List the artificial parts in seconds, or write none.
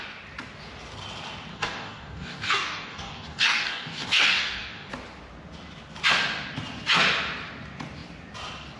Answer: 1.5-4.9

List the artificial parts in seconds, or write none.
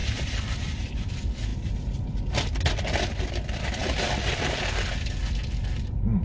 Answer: none